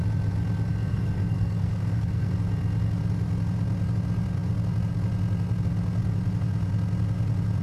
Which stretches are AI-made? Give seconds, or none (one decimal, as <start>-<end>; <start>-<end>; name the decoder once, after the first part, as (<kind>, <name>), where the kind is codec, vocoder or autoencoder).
0.7-2.3 (codec, SNAC)